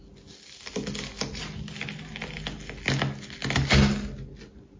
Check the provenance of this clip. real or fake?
real